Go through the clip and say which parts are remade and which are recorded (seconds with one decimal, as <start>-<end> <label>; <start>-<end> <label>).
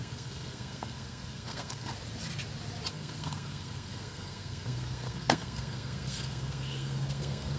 0.0-1.9 remade; 1.9-2.9 recorded; 2.9-7.6 remade